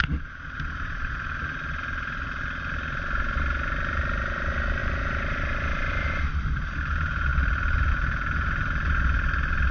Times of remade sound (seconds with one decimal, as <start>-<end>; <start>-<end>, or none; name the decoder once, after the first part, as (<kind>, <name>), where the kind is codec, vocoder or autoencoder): 4.8-6.3 (vocoder, BigVGAN v2)